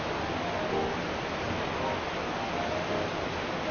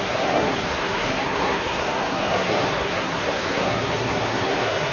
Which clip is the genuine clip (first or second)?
first